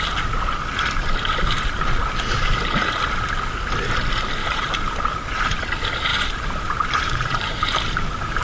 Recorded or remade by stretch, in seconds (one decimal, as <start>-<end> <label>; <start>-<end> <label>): 0.0-4.4 recorded; 4.4-5.6 remade; 5.6-6.1 recorded; 6.1-8.4 remade